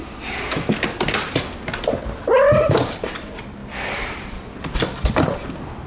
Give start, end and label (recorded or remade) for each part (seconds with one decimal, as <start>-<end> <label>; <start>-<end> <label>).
0.0-5.9 recorded